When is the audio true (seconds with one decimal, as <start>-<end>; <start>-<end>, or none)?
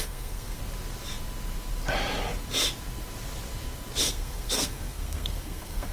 0.6-4.1